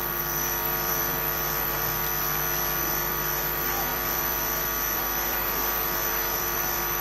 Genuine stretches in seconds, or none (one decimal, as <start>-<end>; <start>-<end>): 2.0-2.8